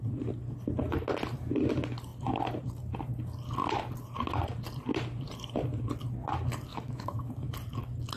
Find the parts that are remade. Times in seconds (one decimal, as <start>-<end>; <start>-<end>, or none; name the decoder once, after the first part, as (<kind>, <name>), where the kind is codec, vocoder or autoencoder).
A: 6.7-7.3 (autoencoder, DAC-VAE)